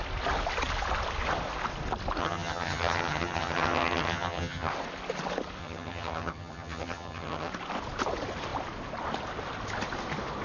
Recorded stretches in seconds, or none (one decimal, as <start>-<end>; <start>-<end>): 0.0-2.2; 4.7-5.6; 7.5-10.4